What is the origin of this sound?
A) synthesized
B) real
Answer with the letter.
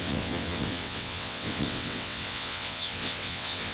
A